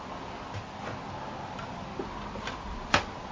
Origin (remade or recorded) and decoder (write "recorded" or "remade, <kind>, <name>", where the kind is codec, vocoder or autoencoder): recorded